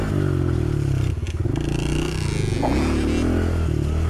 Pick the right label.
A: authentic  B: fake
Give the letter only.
A